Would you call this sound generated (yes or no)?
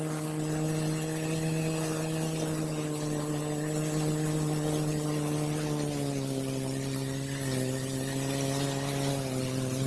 no